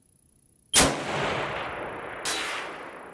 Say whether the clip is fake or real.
real